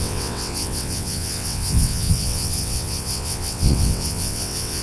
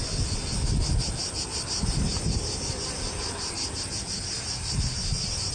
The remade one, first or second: first